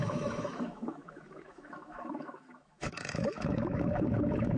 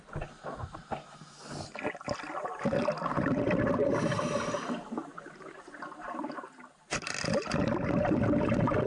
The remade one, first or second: first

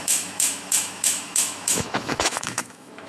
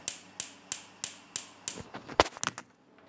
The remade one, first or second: first